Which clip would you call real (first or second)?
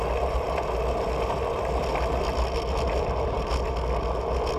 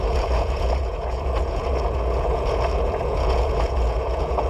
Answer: first